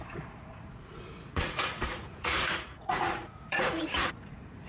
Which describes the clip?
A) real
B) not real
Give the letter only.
B